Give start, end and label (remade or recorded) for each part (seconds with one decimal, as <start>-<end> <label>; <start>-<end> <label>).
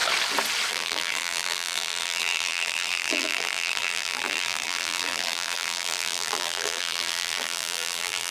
0.0-0.7 recorded; 0.7-8.3 remade